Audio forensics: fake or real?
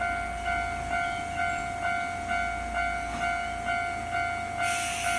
real